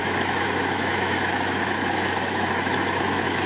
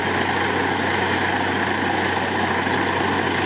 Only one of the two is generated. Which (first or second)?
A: first